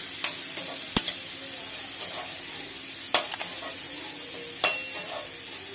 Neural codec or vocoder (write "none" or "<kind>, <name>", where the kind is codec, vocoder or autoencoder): none